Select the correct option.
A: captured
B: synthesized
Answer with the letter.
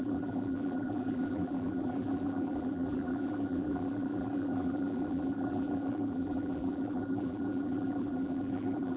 B